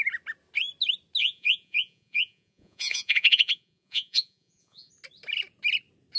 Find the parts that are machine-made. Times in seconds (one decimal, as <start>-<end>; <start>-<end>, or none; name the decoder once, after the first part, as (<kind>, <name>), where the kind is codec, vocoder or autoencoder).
1.2-4.9 (vocoder, Vocos)